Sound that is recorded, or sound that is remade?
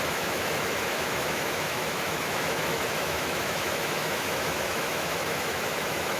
remade